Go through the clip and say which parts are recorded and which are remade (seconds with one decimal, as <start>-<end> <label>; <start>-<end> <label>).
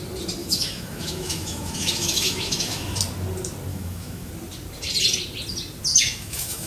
0.0-0.4 recorded; 0.4-3.0 remade; 3.0-3.7 recorded; 3.7-4.3 remade; 4.3-5.9 recorded; 5.9-6.7 remade